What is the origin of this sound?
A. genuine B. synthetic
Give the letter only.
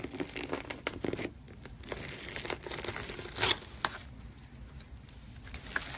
A